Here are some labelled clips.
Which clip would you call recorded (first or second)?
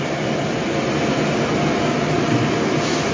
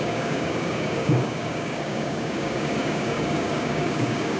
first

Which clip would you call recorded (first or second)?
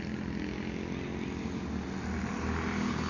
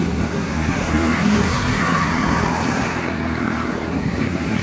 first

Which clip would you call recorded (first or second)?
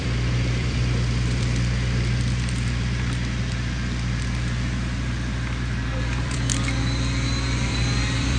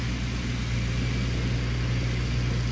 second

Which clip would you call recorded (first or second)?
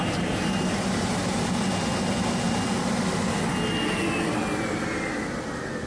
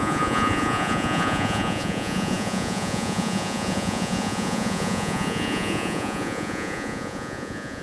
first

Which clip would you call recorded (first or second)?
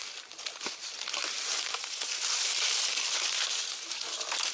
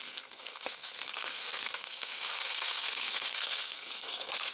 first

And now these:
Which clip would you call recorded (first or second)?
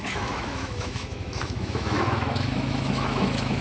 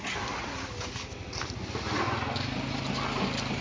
second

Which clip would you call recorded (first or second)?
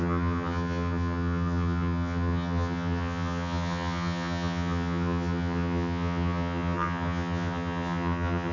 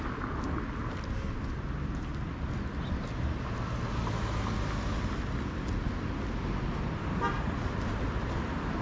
second